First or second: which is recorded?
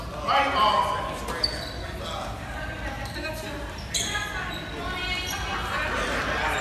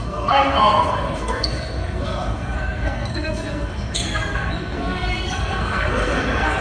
first